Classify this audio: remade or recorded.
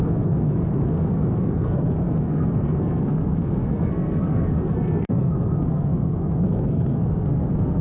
remade